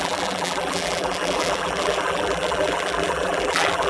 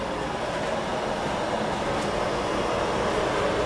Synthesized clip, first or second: first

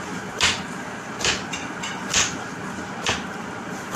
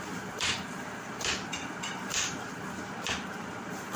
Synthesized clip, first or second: second